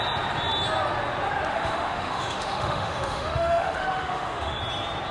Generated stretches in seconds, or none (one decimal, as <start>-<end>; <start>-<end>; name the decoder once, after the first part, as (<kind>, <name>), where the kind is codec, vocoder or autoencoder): 1.5-4.6 (autoencoder, DAC-VAE)

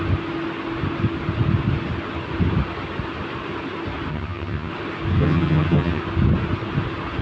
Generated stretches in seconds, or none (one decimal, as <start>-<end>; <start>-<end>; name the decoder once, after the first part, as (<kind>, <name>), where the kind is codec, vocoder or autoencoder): 4.1-4.7 (vocoder, HiFi-GAN); 5.2-6.0

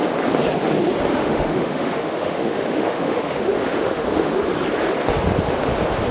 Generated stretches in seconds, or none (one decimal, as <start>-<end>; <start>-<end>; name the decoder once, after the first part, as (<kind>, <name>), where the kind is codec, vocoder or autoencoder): 1.1-4.3 (autoencoder, DAC-VAE)

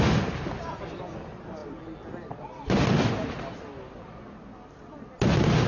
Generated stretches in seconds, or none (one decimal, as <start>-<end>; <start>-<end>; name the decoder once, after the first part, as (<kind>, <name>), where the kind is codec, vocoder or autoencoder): none